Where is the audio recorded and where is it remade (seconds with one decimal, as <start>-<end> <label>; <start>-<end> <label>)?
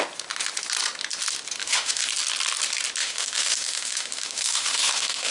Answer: 0.0-1.6 recorded; 1.6-2.1 remade; 2.1-3.0 recorded; 3.0-5.3 remade